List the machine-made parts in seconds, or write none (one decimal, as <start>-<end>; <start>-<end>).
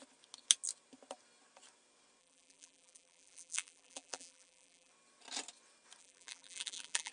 2.2-4.9; 6.0-7.1